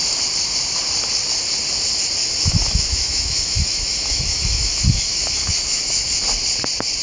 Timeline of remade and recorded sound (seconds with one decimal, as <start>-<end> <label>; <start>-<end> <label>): 0.0-2.2 recorded; 2.2-6.2 remade; 6.2-7.0 recorded